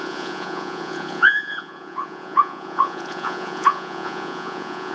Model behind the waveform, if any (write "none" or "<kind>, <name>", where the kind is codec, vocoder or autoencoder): vocoder, Vocos